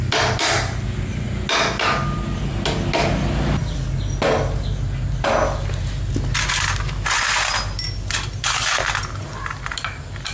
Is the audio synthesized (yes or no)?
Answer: no